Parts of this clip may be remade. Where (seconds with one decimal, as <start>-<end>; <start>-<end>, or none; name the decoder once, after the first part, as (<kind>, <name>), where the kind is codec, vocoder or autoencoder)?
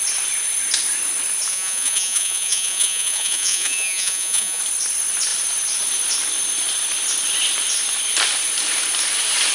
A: 1.5-4.6 (vocoder, Vocos)